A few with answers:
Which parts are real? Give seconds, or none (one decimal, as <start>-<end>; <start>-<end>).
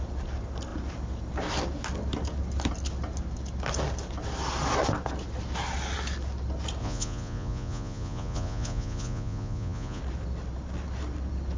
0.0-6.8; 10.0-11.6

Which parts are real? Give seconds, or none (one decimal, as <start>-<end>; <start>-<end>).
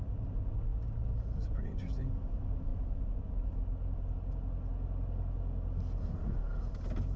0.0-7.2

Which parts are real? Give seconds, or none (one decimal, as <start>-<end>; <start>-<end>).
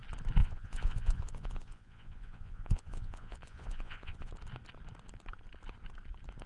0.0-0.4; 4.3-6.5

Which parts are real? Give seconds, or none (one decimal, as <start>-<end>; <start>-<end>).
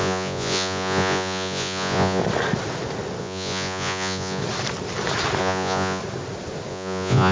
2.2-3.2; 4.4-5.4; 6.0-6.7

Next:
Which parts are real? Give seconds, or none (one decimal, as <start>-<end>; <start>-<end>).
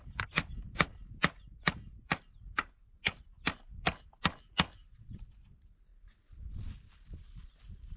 0.0-4.8; 5.5-8.0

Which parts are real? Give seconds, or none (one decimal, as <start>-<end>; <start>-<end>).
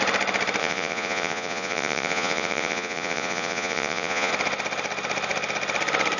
0.0-0.6; 4.3-6.2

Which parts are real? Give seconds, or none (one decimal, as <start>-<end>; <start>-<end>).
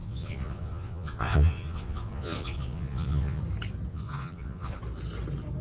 3.4-3.9; 4.8-5.6